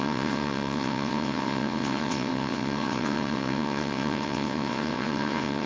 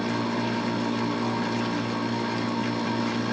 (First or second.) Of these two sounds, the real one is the second